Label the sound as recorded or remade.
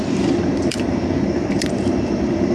remade